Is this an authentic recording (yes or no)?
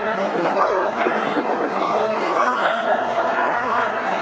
no